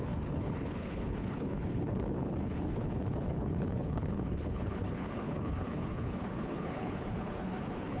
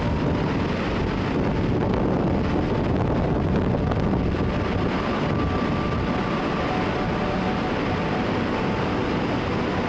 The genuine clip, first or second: second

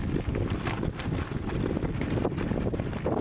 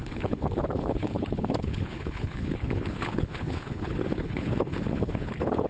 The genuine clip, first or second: first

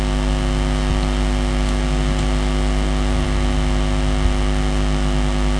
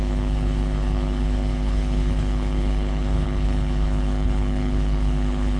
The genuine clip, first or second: first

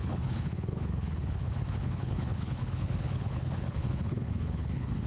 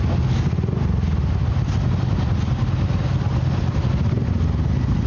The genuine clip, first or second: second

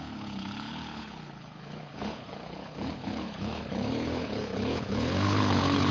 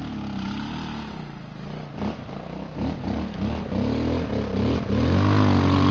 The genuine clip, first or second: second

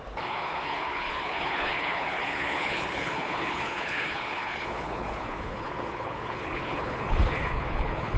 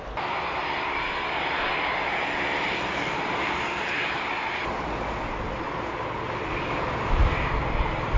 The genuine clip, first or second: second